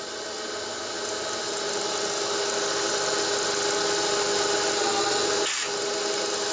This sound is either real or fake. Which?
real